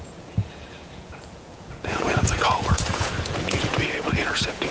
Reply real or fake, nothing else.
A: fake